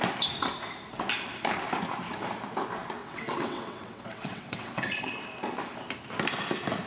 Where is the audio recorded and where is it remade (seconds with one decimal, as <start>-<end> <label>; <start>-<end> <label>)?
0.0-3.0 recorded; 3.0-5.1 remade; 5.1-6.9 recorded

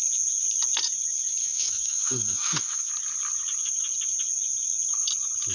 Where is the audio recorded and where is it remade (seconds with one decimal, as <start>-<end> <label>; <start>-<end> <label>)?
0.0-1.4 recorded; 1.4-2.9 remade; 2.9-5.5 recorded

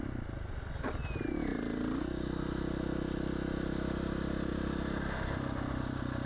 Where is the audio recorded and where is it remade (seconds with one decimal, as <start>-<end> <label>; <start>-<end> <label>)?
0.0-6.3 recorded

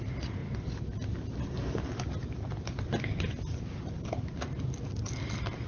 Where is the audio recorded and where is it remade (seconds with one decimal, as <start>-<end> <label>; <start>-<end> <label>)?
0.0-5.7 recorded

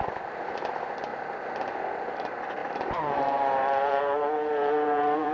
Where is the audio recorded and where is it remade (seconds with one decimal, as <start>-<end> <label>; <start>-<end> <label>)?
0.0-1.1 remade; 1.1-2.1 recorded; 2.1-5.3 remade

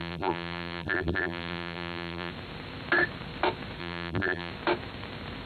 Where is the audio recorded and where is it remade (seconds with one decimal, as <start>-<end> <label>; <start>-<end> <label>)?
0.0-2.3 remade; 2.3-3.8 recorded; 3.8-4.5 remade; 4.5-5.5 recorded

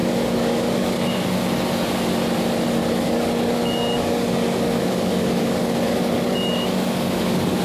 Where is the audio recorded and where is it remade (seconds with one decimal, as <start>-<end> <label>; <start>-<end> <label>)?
0.0-1.3 remade; 1.3-2.8 recorded; 2.8-7.6 remade